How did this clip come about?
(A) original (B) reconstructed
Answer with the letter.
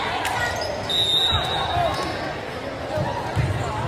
A